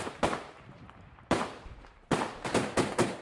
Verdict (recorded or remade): remade